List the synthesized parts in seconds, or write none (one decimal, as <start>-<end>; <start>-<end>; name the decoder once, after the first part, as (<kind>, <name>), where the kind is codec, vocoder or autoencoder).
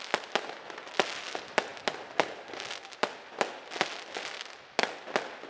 none